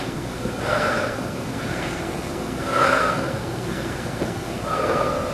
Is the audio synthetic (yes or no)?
yes